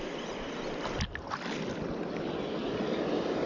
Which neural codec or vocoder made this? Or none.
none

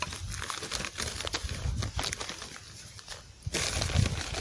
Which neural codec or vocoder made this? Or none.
none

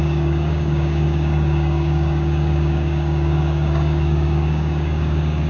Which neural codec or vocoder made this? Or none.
codec, DAC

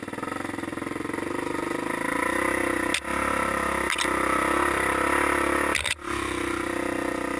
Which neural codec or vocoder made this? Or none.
none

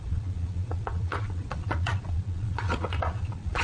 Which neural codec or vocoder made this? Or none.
vocoder, Vocos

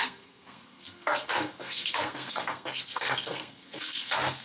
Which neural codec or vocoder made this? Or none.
codec, SNAC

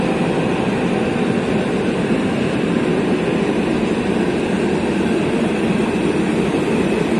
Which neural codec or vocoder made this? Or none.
none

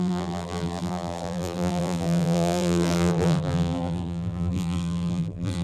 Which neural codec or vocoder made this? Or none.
vocoder, BigVGAN v2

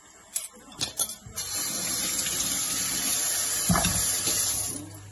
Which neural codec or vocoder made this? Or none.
none